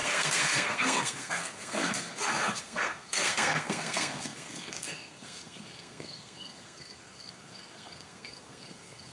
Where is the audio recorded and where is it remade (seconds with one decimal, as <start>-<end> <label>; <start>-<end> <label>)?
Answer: 0.0-9.1 remade